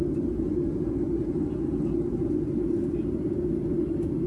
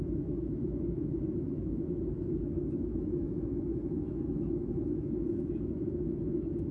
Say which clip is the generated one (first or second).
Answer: second